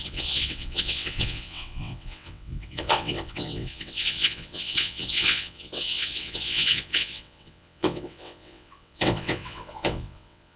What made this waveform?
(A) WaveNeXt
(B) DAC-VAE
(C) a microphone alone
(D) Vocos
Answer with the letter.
A